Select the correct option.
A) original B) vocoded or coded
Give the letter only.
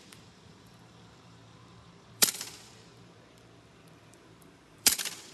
B